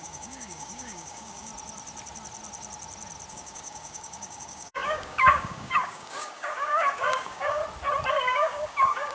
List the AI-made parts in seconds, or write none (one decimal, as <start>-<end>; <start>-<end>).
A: 0.0-1.5; 3.3-7.6; 8.1-9.1